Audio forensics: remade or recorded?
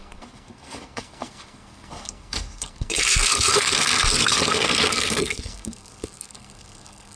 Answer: remade